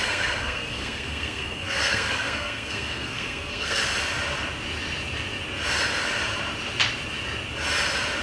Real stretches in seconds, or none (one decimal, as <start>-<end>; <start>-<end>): 3.9-8.2